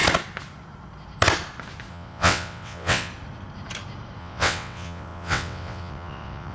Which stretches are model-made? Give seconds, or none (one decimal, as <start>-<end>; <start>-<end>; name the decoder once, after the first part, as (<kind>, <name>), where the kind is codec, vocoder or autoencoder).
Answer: 1.9-3.1 (vocoder, WaveNeXt); 4.2-6.5